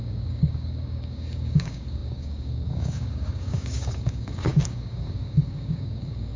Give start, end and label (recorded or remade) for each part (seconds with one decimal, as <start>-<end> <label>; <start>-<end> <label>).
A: 0.0-6.4 remade